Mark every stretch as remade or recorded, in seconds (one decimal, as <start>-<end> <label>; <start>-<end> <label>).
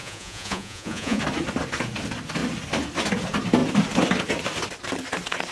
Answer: 0.0-1.2 remade; 1.2-5.5 recorded